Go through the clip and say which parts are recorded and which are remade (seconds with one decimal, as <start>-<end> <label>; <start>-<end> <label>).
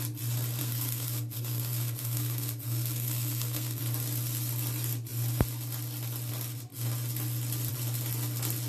0.0-0.6 recorded; 0.6-3.8 remade; 3.8-8.7 recorded